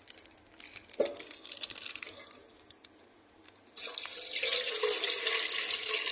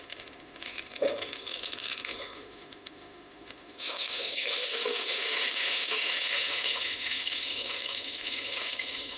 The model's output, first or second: second